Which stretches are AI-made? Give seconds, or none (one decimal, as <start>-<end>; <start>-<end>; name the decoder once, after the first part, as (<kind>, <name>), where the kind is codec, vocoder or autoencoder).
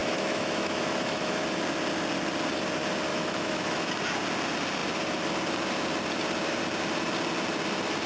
0.0-1.4 (autoencoder, DAC-VAE); 3.1-3.9